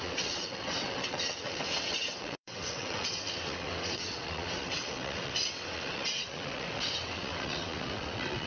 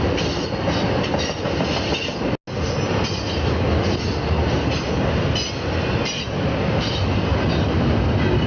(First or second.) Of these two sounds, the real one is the second